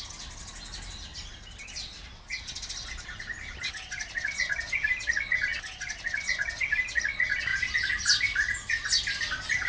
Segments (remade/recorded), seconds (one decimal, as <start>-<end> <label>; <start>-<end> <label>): 0.0-2.0 recorded; 2.0-3.6 remade; 3.6-9.7 recorded